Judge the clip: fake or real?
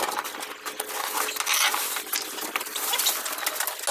real